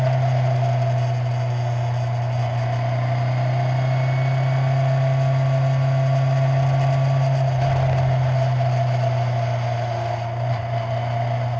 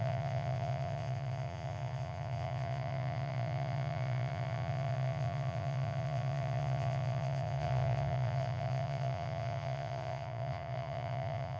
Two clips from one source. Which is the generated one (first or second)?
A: second